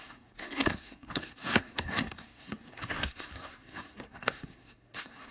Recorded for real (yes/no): no